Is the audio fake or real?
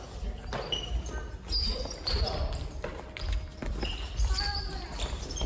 real